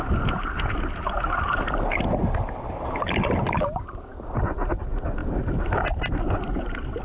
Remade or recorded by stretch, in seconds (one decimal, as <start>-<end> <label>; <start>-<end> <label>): 0.0-7.0 recorded

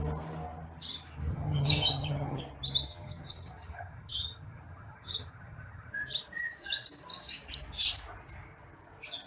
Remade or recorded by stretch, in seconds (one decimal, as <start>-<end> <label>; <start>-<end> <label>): 0.0-1.3 recorded; 1.3-2.4 remade; 2.4-2.9 recorded; 2.9-5.9 remade; 5.9-9.3 recorded

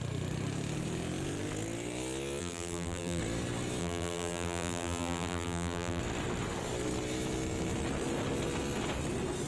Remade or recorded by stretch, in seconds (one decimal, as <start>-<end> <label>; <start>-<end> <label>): 0.0-2.4 recorded; 2.4-3.2 remade; 3.2-3.8 recorded; 3.8-6.0 remade; 6.0-9.5 recorded